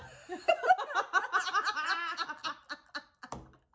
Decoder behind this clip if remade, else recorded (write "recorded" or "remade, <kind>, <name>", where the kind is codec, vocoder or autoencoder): recorded